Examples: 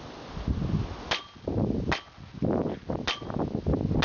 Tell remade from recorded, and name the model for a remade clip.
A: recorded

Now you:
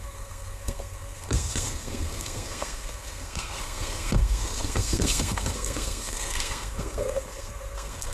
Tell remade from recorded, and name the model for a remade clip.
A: remade, codec, SNAC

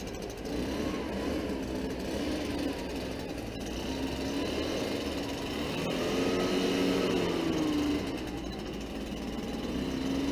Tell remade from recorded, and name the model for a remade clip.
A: recorded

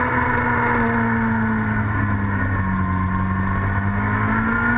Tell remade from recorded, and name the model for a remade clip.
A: recorded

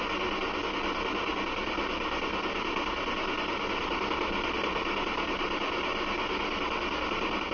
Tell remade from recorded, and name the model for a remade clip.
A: recorded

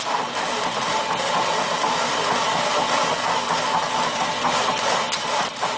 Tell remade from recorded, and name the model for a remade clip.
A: recorded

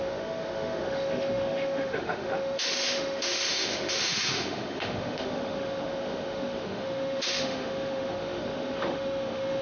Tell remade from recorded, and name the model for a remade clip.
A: remade, autoencoder, DAC-VAE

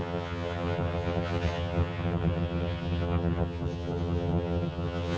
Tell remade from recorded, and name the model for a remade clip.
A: remade, vocoder, HiFi-GAN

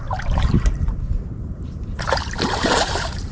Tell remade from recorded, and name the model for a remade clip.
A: remade, vocoder, BigVGAN v2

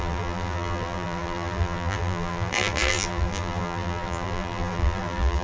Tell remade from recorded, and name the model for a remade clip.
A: remade, vocoder, BigVGAN v2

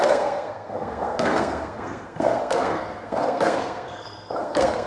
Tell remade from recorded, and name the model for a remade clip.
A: remade, codec, SNAC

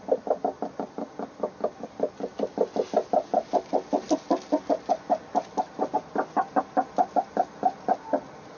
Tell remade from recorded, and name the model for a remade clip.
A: recorded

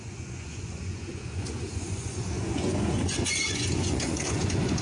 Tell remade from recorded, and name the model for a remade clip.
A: remade, vocoder, Vocos